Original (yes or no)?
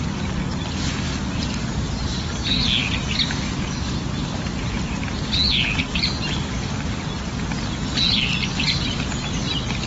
yes